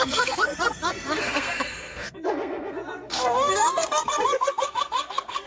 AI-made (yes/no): yes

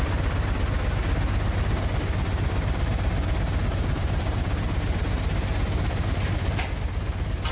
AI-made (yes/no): no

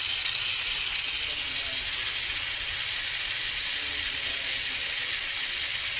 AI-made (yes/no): no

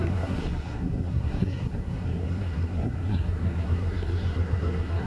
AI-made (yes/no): yes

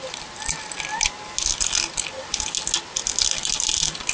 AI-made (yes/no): no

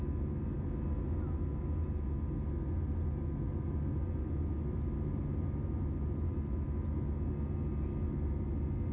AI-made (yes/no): no